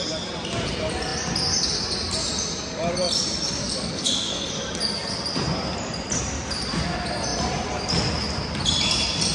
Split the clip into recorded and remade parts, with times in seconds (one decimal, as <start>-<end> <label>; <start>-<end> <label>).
0.0-3.6 recorded; 3.6-4.5 remade; 4.5-9.3 recorded